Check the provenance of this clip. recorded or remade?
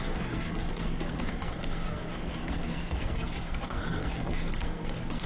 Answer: remade